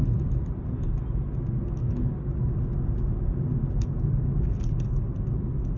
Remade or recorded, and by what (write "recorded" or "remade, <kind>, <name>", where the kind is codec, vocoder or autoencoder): recorded